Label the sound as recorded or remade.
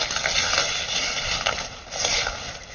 recorded